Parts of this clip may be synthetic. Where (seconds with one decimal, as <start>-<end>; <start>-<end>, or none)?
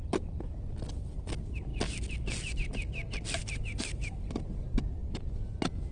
3.4-4.3